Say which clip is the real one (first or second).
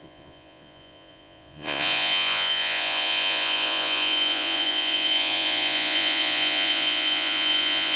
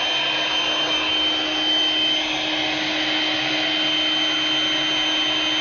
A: second